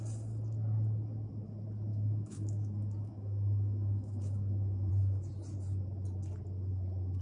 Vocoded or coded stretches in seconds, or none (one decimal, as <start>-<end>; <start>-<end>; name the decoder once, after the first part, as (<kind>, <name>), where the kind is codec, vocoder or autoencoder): 1.9-4.9 (autoencoder, DAC-VAE)